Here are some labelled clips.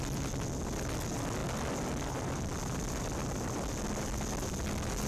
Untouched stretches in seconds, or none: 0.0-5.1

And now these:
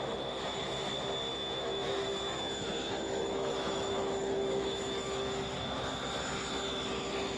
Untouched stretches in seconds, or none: 0.0-1.3; 5.4-7.4

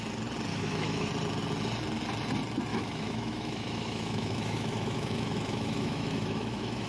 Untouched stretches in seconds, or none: 0.0-0.5; 1.1-2.7

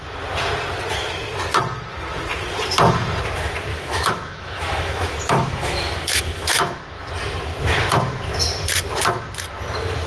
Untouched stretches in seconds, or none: 0.0-3.7; 6.8-10.1

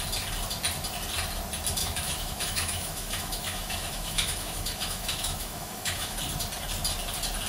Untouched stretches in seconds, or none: 0.0-1.8; 6.2-7.5

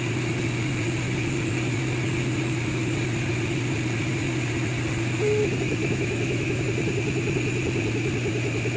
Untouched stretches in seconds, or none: 0.0-5.8; 6.6-8.8

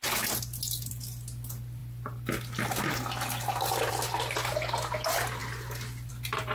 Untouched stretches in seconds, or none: 0.0-6.5

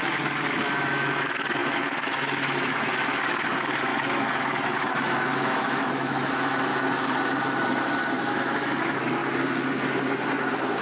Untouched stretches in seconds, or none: 6.7-8.3; 9.2-10.8